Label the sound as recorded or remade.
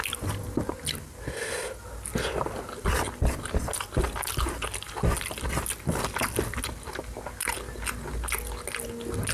recorded